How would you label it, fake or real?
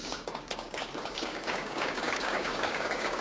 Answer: fake